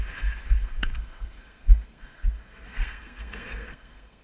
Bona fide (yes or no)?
no